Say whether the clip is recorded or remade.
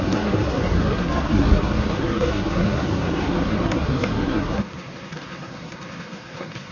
remade